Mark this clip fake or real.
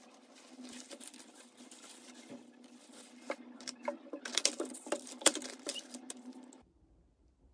real